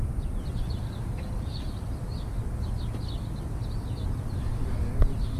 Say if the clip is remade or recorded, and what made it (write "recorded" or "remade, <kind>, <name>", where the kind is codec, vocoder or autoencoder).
recorded